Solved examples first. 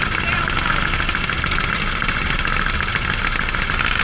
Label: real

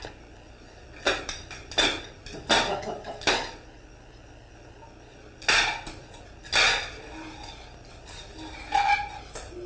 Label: real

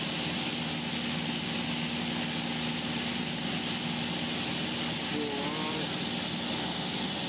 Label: real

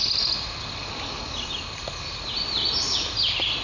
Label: real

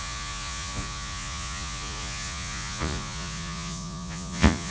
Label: fake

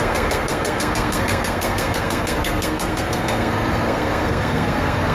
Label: fake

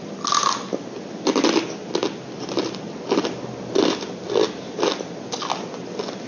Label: real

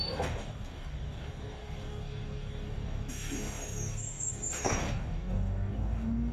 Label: fake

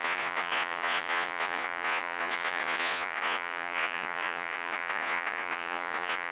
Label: fake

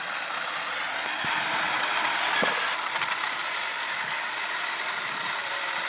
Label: real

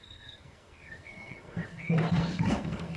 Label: fake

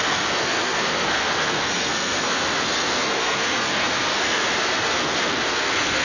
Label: fake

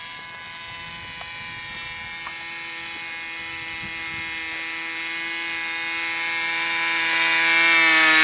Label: real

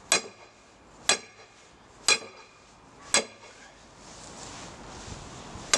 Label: real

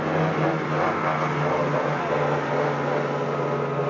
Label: real